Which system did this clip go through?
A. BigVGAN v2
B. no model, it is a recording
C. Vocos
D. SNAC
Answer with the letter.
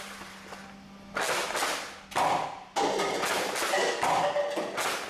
B